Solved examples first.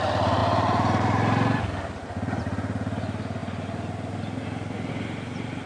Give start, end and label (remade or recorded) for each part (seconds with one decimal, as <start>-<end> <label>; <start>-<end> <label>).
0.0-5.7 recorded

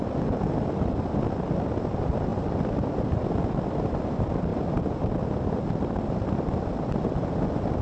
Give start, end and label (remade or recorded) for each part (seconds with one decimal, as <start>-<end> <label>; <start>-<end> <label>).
0.0-7.8 recorded

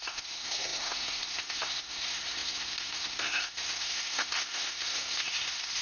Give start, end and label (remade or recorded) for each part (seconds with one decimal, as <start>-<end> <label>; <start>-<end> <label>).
0.0-5.8 remade

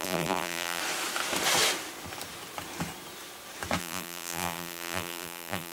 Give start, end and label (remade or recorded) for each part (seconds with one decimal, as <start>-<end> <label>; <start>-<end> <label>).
0.0-0.8 remade; 0.8-3.8 recorded; 3.8-5.7 remade

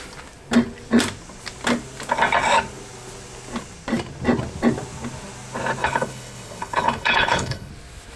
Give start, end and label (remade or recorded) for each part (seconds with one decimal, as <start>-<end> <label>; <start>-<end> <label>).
0.0-5.8 recorded; 5.8-7.7 remade; 7.7-8.2 recorded

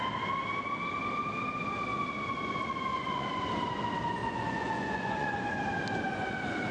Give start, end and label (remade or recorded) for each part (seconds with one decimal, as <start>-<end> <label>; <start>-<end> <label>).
0.0-1.9 recorded; 1.9-3.5 remade; 3.5-4.2 recorded; 4.2-5.6 remade; 5.6-6.7 recorded